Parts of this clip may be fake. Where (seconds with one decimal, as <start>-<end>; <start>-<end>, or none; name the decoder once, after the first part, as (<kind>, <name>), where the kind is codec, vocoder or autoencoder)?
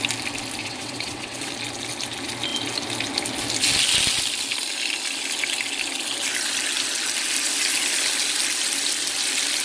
0.6-1.5 (vocoder, WaveNeXt)